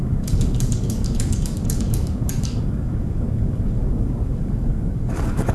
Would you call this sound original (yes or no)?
no